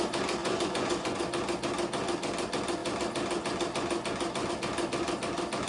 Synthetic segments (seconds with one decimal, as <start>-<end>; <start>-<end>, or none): 0.4-1.2